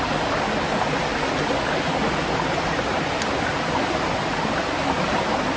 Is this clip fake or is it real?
real